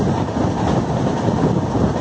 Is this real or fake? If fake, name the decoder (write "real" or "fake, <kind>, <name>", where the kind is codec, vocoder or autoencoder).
real